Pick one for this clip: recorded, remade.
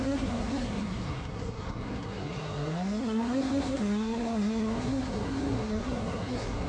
remade